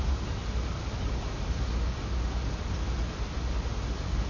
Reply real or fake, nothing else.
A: real